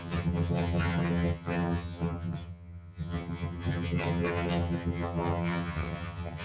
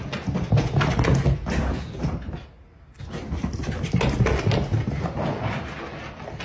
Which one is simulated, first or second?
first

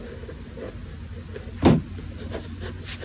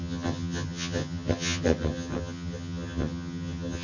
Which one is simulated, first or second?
second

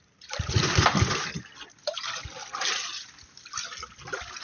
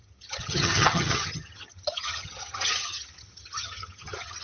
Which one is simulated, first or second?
second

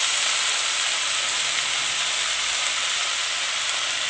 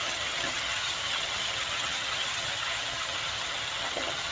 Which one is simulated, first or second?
second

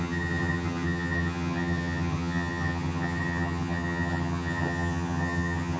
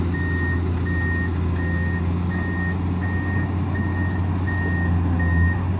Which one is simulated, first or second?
first